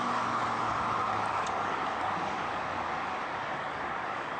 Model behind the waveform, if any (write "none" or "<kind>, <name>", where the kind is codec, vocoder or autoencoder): codec, DAC